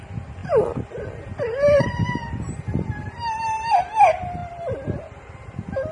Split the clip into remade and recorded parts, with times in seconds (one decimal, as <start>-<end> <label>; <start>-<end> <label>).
0.0-5.9 recorded